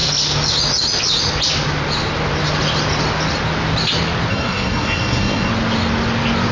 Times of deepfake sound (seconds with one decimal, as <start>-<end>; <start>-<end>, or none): 4.3-5.5